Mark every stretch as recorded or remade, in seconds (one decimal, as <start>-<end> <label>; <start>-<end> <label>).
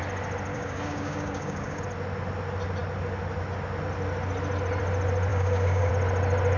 0.0-0.5 recorded; 0.5-1.8 remade; 1.8-5.3 recorded; 5.3-5.9 remade; 5.9-6.6 recorded